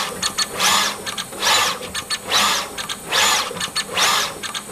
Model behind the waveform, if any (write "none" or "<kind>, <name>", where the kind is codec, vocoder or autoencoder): none